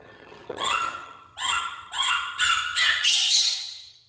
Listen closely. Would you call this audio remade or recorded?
remade